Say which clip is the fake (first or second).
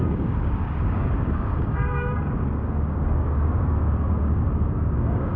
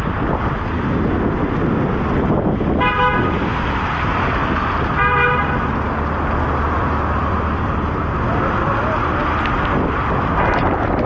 first